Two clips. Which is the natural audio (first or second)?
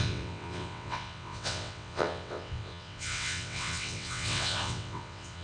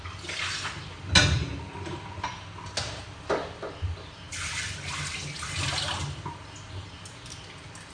second